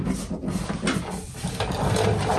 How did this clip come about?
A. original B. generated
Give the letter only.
A